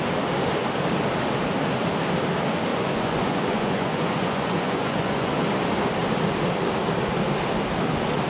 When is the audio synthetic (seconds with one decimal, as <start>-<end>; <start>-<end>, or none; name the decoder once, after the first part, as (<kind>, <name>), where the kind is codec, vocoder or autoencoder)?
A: 2.7-5.3 (vocoder, Vocos)